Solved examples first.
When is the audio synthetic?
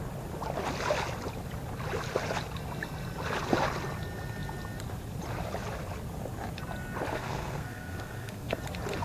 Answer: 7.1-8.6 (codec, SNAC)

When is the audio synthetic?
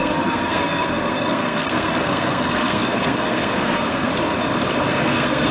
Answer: 0.0-4.1 (codec, SNAC); 4.9-5.5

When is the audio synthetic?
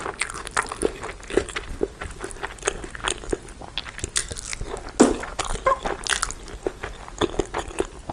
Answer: none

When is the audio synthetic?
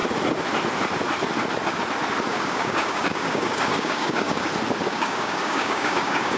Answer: 2.3-4.5 (codec, DAC); 4.9-6.4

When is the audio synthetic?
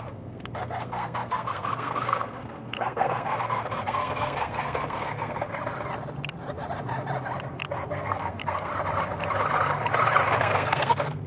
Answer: 0.0-5.5 (codec, SNAC); 7.9-8.7; 10.4-11.3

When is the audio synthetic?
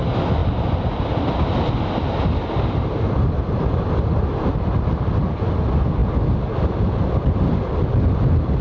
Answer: none